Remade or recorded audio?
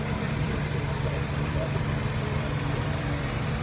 remade